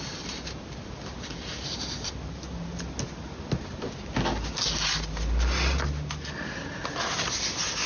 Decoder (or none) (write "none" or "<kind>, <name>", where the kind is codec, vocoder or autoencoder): none